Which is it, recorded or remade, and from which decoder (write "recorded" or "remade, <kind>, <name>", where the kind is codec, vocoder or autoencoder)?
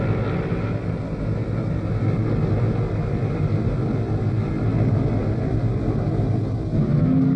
recorded